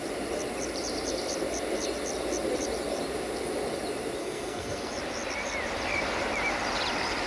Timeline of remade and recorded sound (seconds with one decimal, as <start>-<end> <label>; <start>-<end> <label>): 0.0-4.2 recorded; 4.2-4.9 remade; 4.9-7.3 recorded

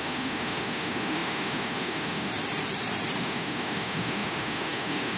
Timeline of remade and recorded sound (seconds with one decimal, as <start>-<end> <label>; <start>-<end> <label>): 0.0-2.3 remade; 2.3-3.2 recorded; 3.2-5.2 remade

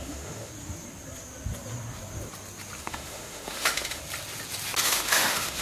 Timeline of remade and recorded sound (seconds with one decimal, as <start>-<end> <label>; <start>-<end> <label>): 0.0-0.5 remade; 0.5-2.8 recorded; 2.8-4.0 remade; 4.0-4.8 recorded; 4.8-5.6 remade

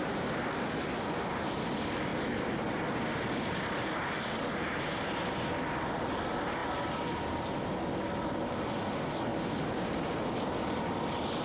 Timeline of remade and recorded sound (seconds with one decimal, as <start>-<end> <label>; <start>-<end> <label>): 0.0-11.4 recorded

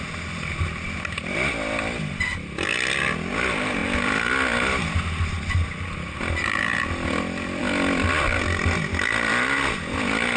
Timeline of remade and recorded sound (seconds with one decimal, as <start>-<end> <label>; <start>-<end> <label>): 0.0-10.4 recorded

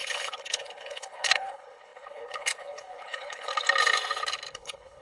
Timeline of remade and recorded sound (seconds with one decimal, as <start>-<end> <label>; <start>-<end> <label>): 0.0-3.5 remade; 3.5-4.5 recorded; 4.5-5.0 remade

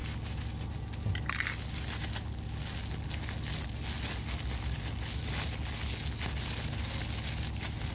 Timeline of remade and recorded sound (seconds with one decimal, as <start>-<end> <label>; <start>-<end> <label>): 0.0-7.9 recorded